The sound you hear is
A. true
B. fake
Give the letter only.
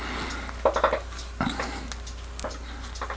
A